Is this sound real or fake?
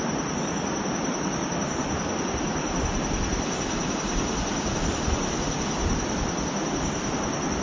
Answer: real